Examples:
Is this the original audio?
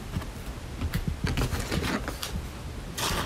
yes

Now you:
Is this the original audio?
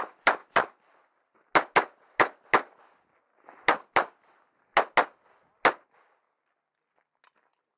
yes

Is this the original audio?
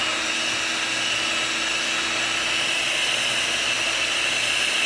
yes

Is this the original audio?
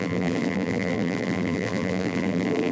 no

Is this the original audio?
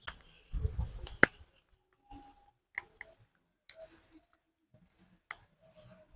yes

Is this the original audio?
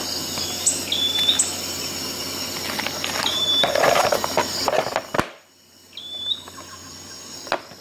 yes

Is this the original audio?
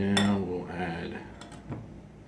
yes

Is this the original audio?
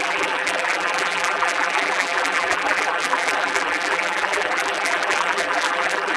no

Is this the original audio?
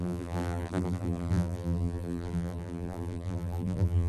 no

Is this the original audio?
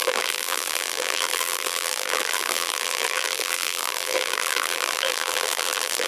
no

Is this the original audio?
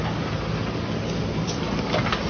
yes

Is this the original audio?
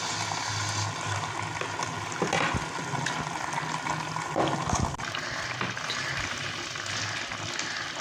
yes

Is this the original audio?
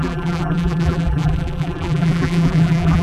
no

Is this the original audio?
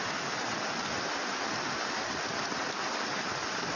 yes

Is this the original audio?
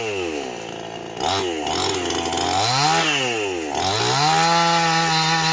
yes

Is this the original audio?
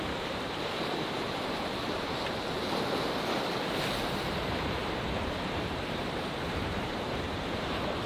no